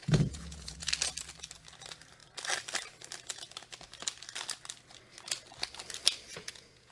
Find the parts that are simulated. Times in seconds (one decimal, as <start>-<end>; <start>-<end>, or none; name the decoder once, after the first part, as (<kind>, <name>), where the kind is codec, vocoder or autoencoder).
0.0-0.9 (vocoder, Vocos); 6.3-6.9

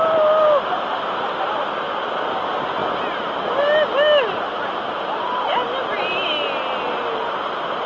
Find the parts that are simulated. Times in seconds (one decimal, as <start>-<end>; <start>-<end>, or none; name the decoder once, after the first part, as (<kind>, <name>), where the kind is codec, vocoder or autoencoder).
none

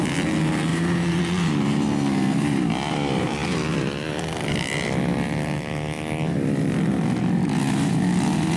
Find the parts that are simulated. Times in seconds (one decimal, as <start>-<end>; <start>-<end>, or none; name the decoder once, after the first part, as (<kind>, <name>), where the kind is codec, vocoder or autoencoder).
0.7-1.2 (vocoder, BigVGAN v2)

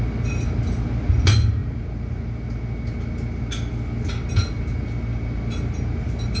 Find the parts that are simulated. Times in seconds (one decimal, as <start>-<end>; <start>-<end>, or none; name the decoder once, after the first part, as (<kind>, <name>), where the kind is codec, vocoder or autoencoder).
none

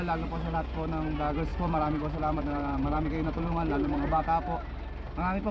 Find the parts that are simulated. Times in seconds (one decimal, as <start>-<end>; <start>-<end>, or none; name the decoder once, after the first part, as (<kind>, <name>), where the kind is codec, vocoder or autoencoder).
1.5-4.2 (vocoder, BigVGAN v2)

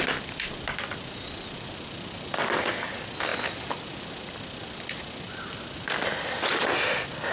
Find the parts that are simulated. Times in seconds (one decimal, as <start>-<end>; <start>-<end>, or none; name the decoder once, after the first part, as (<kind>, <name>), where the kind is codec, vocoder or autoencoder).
none

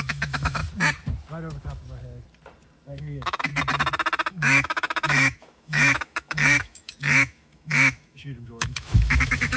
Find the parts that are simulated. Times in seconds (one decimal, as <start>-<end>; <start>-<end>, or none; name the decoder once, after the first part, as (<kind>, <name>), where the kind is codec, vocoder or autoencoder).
0.0-0.6 (autoencoder, DAC-VAE); 3.0-3.5; 4.3-9.6

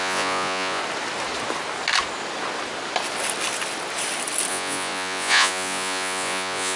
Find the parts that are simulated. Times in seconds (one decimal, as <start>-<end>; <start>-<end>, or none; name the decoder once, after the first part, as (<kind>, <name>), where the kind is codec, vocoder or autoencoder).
0.0-0.8 (vocoder, Vocos); 4.5-6.8